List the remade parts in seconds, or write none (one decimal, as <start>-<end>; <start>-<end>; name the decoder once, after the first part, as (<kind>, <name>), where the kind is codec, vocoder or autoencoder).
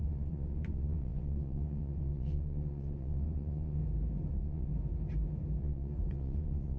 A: 0.0-3.8 (vocoder, Vocos); 4.3-4.7; 5.6-6.8